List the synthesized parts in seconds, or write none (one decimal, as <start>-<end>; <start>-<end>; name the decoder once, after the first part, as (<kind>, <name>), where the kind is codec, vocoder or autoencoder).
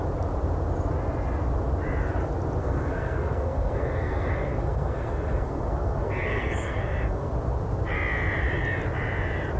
2.6-7.3 (codec, SNAC)